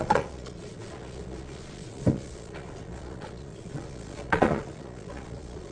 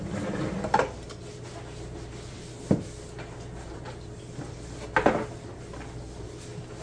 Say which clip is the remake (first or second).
first